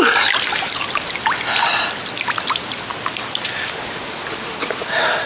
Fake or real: real